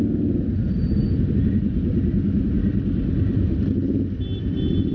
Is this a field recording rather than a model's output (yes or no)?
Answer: yes